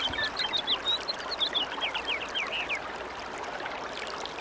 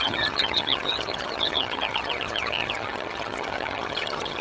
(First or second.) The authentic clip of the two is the first